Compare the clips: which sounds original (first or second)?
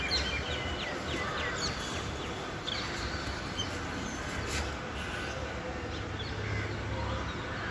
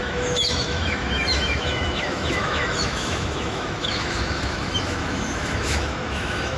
first